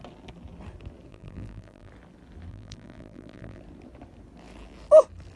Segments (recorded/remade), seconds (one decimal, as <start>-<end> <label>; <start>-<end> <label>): 0.0-1.1 recorded; 1.1-1.9 remade; 1.9-2.5 recorded; 2.5-3.6 remade; 3.6-5.4 recorded